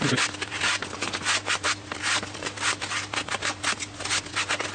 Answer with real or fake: real